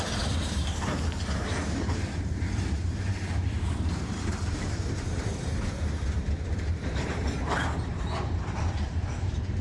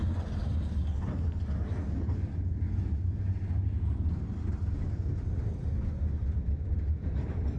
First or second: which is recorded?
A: second